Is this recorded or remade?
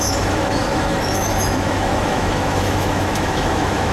remade